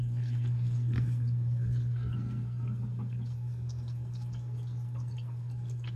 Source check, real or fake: fake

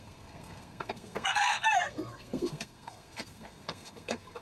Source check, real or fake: fake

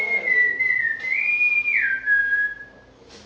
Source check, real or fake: real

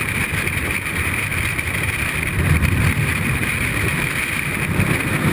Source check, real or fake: fake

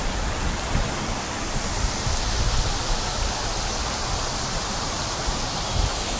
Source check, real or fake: real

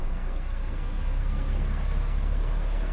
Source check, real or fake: fake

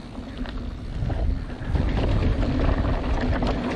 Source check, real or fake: real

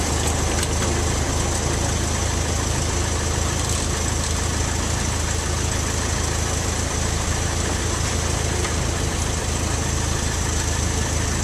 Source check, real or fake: real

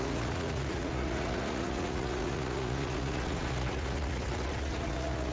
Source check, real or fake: fake